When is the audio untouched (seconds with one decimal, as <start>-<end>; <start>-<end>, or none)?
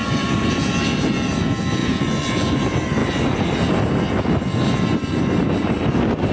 0.6-1.8; 2.6-6.3